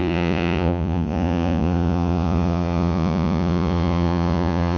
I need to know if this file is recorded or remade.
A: remade